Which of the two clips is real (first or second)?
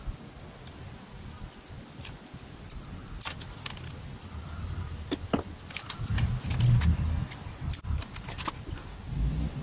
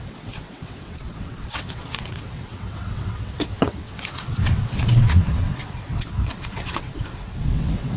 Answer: first